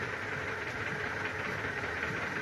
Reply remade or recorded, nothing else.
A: remade